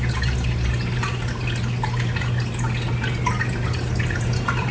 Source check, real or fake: real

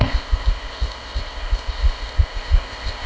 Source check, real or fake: fake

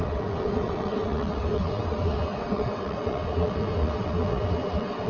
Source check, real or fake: fake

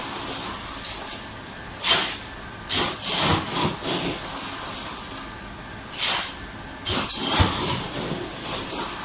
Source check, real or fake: real